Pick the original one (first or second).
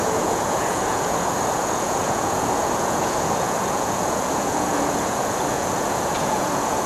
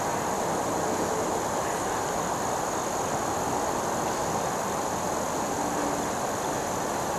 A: second